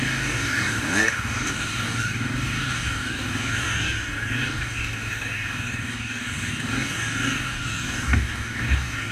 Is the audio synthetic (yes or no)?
yes